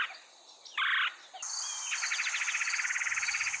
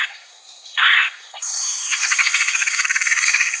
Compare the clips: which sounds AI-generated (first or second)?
second